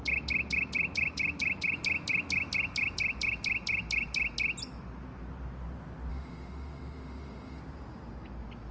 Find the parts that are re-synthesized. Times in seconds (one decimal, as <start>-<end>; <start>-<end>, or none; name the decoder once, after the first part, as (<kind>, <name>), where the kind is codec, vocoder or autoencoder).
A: 6.1-7.6 (autoencoder, DAC-VAE)